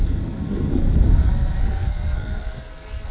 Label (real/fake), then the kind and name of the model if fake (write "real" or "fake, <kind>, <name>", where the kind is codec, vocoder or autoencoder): fake, codec, SNAC